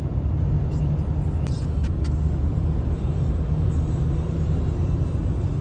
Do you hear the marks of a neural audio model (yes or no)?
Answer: no